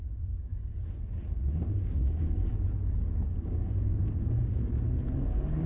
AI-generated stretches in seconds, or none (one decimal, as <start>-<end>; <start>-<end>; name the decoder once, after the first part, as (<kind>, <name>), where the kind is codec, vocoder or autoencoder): 0.0-0.5 (codec, DAC); 1.8-5.7